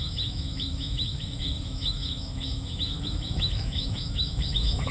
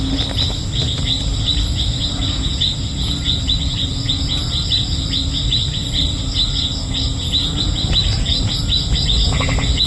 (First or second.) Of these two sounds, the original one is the second